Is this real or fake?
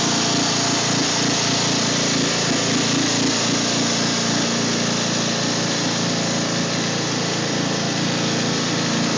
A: real